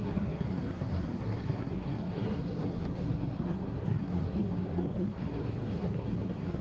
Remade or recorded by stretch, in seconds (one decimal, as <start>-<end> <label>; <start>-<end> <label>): 0.0-6.6 remade